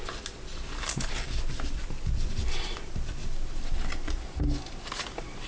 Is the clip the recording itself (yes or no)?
yes